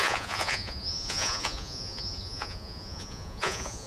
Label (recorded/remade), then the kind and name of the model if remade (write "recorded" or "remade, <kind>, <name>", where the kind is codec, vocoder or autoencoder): remade, vocoder, Vocos